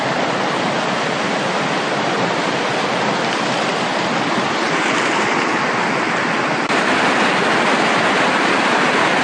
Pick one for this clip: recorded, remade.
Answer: recorded